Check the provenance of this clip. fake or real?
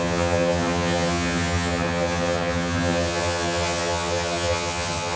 fake